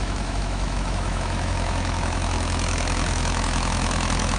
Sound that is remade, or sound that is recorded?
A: remade